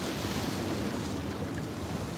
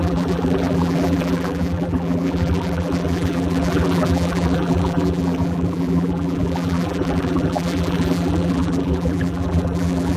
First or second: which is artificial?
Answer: second